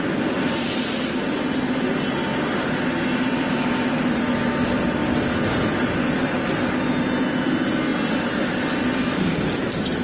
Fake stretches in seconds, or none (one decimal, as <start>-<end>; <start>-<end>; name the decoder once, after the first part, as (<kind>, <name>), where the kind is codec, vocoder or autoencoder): 2.3-4.2 (vocoder, BigVGAN v2)